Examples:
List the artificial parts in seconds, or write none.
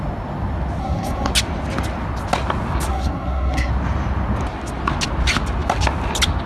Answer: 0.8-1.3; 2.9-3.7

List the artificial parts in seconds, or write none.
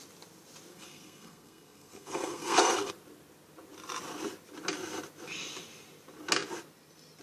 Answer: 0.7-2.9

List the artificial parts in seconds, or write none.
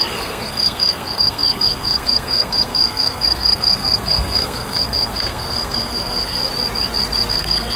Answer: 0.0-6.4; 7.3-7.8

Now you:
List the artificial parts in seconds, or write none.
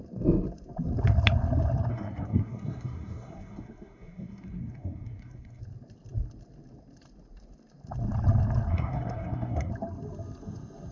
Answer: 1.9-5.6; 8.7-9.7